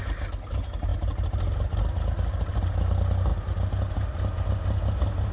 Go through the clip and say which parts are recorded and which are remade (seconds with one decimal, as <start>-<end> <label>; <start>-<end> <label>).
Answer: 0.0-5.3 recorded